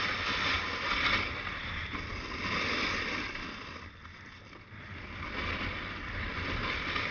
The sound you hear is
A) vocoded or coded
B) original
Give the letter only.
B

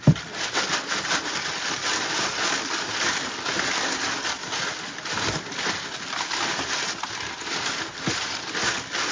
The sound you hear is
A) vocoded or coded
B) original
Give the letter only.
B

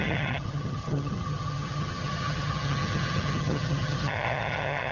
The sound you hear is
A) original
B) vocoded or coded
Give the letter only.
B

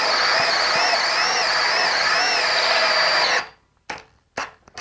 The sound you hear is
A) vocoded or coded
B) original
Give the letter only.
B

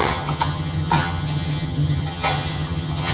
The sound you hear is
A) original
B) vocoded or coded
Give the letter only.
B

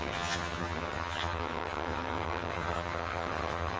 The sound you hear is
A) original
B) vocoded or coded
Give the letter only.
B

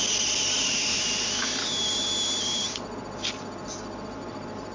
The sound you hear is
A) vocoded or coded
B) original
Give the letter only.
B